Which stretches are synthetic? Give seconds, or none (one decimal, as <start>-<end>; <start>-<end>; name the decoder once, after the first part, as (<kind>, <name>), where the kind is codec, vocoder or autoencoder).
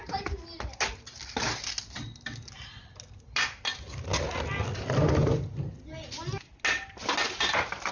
none